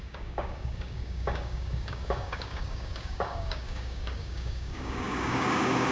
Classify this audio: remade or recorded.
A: remade